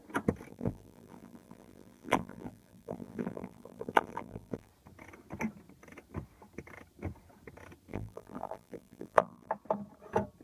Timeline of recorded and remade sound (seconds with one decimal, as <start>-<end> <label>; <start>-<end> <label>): 0.0-0.5 recorded; 0.5-4.7 remade; 4.7-7.9 recorded; 7.9-9.5 remade; 9.5-10.4 recorded